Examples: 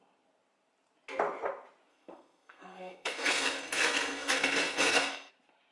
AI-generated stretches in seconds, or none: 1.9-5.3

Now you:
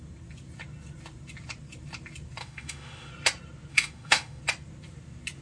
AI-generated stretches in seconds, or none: 2.4-3.1; 3.7-4.4

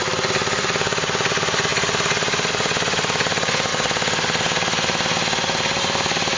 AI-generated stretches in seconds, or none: 0.0-1.7; 2.5-3.7; 5.8-6.4